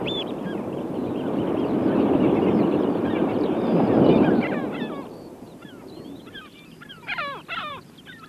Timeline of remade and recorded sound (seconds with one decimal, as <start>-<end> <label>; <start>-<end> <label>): 0.0-1.0 remade; 1.0-2.5 recorded; 2.5-4.6 remade; 4.6-5.2 recorded; 5.2-7.2 remade; 7.2-7.7 recorded; 7.7-8.3 remade